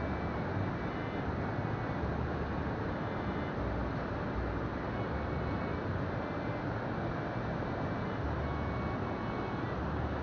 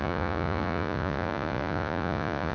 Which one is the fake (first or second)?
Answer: second